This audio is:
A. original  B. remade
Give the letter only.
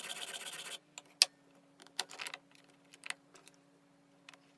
A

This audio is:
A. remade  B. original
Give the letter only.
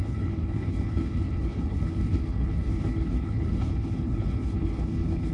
A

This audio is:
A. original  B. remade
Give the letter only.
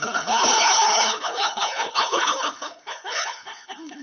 B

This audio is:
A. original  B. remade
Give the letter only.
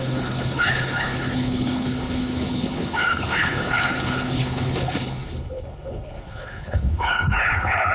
B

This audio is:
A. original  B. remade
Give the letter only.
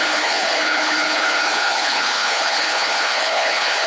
B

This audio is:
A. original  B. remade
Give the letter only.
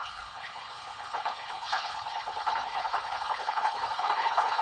B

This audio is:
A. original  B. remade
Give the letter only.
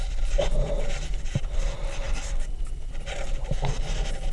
A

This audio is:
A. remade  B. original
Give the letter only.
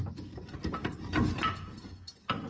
B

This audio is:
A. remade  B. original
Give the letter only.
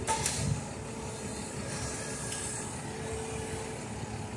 B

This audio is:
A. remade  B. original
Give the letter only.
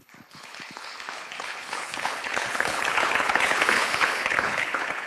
A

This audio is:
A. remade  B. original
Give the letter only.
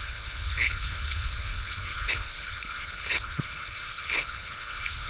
A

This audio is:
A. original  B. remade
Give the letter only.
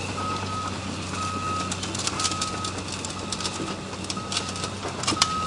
A